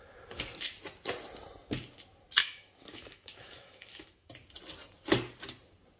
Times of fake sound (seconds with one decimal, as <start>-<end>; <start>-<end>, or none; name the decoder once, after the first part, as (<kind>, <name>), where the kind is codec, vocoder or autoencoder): 2.4-4.3 (autoencoder, DAC-VAE)